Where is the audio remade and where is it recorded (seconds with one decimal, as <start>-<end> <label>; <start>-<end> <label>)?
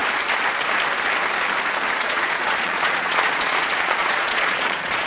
0.0-2.0 recorded; 2.0-5.1 remade